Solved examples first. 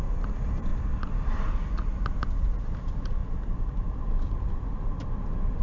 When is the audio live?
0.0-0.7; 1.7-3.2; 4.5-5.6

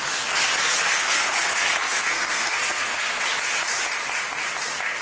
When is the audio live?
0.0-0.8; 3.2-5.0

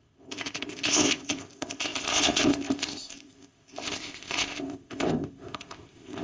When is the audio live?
none